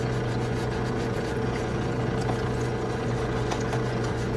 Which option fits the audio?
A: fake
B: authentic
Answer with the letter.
A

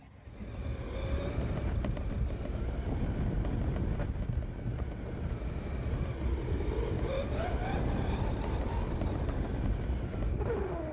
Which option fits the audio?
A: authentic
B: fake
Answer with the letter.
A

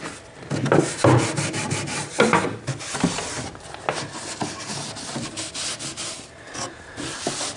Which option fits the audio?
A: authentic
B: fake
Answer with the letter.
A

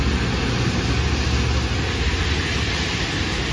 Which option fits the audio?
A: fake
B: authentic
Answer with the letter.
B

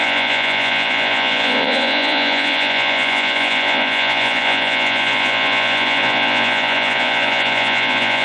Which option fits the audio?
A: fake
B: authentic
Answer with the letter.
A